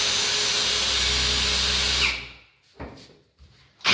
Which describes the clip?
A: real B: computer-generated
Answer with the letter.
A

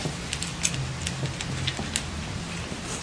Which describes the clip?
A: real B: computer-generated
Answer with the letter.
A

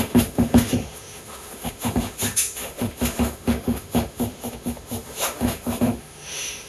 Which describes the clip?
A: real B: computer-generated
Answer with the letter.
B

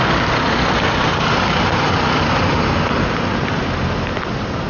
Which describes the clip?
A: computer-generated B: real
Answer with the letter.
B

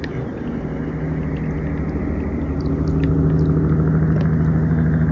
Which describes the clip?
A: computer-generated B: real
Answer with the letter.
B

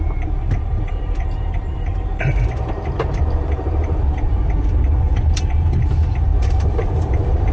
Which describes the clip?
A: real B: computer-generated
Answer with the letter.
B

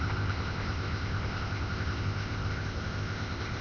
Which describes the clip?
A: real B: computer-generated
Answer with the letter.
B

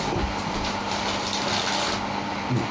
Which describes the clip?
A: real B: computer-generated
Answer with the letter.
A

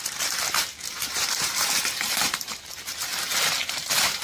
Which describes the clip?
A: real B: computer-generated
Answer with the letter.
B